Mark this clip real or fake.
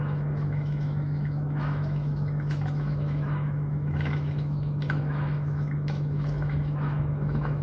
fake